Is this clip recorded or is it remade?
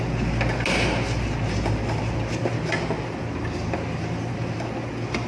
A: recorded